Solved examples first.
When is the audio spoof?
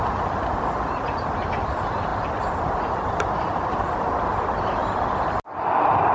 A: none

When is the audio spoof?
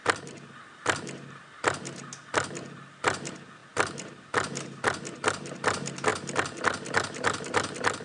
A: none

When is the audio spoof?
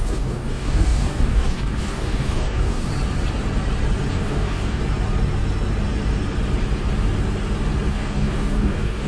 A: 0.0-2.9 (codec, DAC); 4.1-4.8; 7.9-9.1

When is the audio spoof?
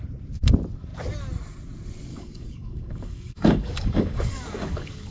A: 2.1-5.1 (codec, DAC)